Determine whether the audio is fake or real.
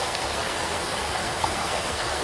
fake